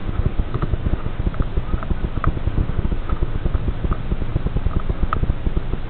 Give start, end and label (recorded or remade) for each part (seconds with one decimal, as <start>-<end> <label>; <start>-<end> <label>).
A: 0.0-1.2 remade; 1.2-2.5 recorded; 2.5-3.5 remade; 3.5-5.9 recorded